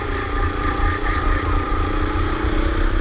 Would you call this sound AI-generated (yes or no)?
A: yes